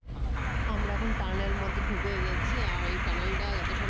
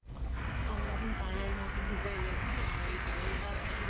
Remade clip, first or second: second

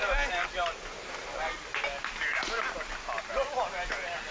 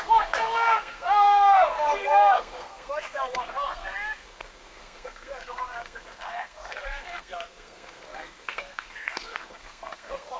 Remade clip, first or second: second